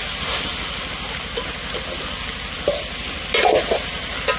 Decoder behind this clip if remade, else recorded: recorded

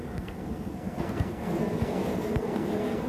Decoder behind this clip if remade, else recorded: remade, codec, SNAC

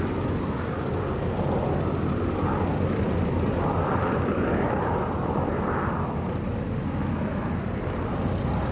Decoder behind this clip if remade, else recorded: recorded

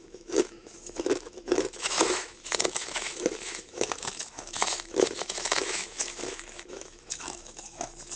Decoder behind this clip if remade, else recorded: remade, autoencoder, DAC-VAE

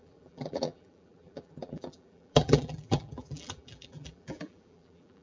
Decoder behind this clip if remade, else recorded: remade, vocoder, BigVGAN v2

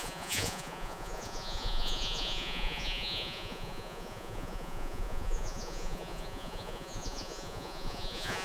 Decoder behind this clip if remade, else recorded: remade, vocoder, Vocos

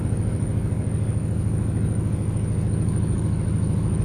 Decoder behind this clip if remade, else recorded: remade, codec, DAC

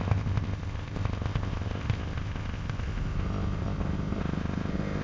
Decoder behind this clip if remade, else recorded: remade, codec, ZipCodec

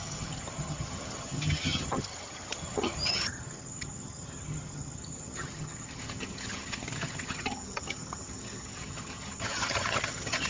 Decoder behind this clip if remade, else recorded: remade, vocoder, HiFi-GAN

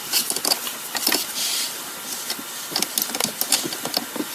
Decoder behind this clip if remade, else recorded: recorded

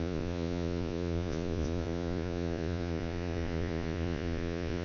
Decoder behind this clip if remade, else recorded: remade, vocoder, Vocos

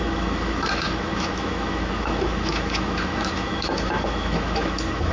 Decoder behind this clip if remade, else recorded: remade, autoencoder, DAC-VAE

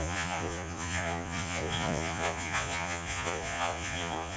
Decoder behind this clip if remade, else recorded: remade, vocoder, Vocos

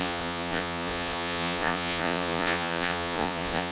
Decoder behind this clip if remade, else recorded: remade, vocoder, Vocos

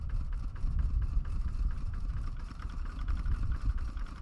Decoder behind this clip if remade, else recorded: remade, vocoder, BigVGAN v2